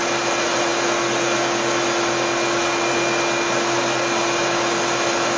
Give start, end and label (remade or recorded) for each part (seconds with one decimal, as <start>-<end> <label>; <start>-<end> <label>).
0.0-5.4 recorded